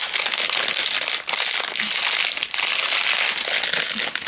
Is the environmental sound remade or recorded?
recorded